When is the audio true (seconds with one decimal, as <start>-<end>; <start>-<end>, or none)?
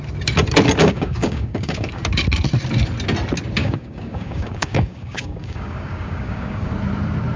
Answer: 0.0-0.8; 2.0-3.6; 6.7-7.4